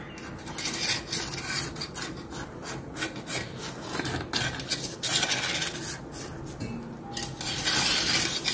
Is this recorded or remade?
recorded